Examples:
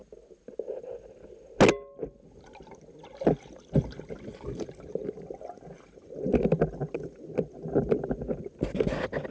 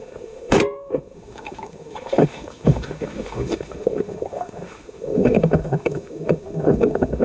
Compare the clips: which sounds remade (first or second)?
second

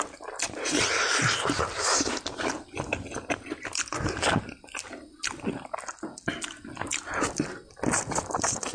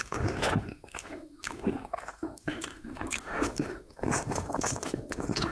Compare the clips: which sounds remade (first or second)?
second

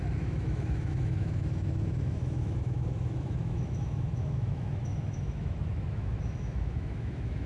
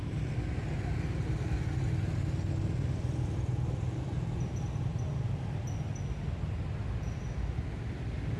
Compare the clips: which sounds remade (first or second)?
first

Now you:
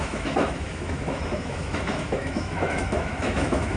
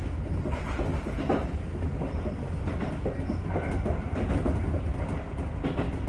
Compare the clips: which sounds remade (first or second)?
first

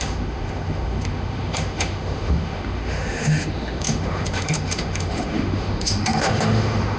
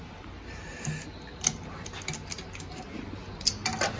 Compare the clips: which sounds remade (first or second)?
first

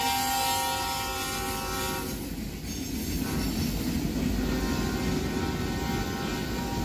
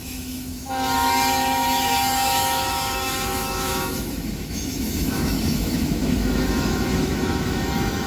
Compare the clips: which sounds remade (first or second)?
second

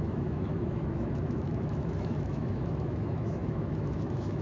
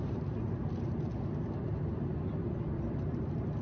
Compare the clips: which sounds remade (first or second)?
first